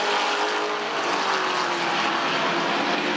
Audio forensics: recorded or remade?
recorded